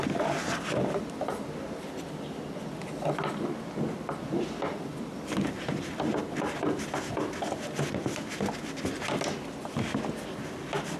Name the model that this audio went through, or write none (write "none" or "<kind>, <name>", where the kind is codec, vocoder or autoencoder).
none